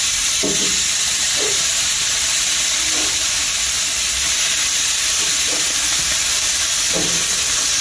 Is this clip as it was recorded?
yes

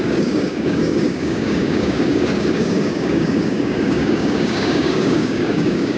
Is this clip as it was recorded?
no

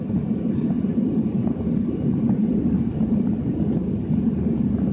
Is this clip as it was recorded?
yes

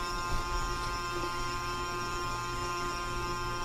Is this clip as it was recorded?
no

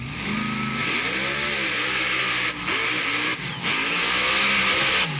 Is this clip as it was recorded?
yes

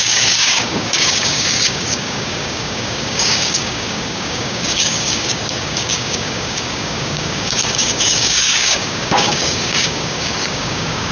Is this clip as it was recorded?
no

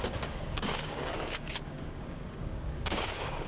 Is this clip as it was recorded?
no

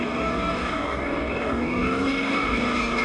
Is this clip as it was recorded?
no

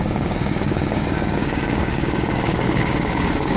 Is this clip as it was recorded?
no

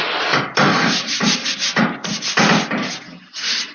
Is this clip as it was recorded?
yes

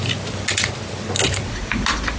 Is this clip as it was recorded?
yes